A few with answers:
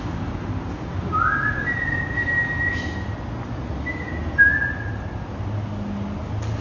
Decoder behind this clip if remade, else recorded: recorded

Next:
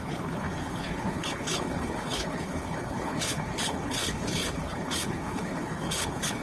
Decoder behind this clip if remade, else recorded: remade, codec, HILCodec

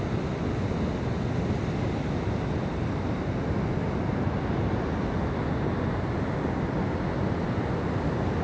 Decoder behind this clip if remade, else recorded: recorded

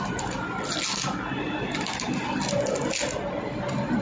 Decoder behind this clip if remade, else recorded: recorded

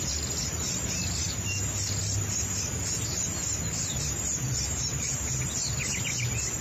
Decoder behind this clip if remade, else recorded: recorded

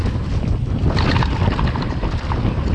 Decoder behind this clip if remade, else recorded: recorded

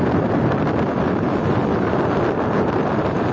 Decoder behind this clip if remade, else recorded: recorded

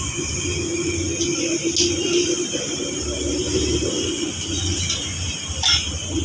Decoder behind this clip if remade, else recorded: recorded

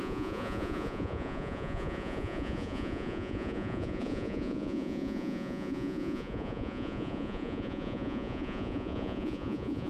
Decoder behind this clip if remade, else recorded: remade, vocoder, Vocos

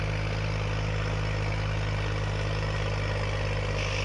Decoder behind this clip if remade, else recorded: recorded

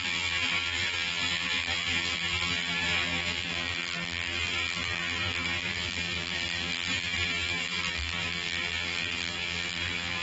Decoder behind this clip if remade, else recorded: remade, vocoder, BigVGAN v2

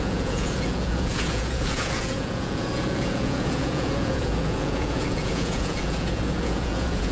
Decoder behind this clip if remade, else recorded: remade, vocoder, Vocos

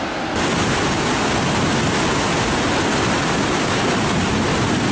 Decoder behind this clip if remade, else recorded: recorded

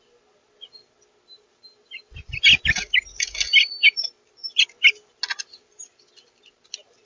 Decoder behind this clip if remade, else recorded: recorded